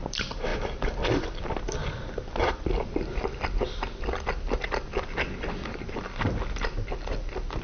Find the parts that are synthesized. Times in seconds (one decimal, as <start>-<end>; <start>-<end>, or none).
none